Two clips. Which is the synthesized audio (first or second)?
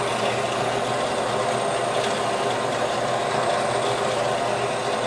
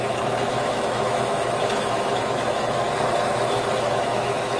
second